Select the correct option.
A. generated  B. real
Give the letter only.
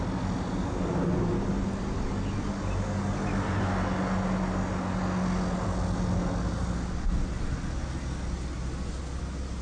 B